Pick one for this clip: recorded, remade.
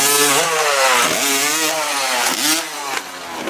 recorded